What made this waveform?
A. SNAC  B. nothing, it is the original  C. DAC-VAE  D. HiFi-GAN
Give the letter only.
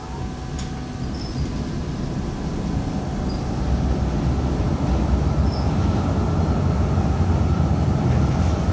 B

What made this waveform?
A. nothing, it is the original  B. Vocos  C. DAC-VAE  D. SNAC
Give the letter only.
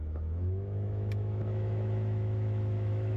C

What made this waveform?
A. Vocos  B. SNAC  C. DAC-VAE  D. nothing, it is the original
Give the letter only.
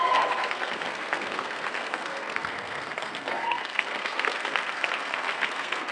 B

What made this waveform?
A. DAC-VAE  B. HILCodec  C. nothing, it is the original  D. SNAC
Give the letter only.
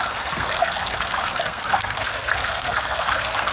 D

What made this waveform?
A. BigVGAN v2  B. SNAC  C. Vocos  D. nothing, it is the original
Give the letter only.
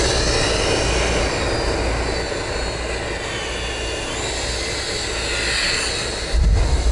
D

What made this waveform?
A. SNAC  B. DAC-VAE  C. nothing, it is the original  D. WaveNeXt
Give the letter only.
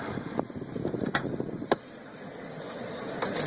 C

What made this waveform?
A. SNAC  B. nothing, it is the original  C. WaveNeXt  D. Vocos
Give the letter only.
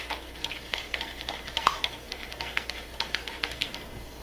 A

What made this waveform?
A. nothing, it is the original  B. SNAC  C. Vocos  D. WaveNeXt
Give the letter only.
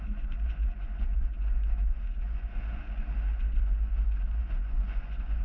C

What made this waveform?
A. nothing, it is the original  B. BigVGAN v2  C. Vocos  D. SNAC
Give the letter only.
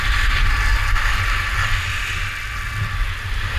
A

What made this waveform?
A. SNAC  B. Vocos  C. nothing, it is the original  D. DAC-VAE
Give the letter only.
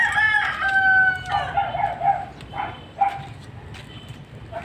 C